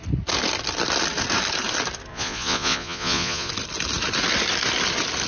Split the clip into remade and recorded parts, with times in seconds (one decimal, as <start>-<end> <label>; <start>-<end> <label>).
0.0-2.1 recorded; 2.1-3.5 remade; 3.5-5.3 recorded